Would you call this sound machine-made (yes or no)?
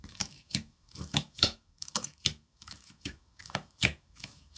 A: yes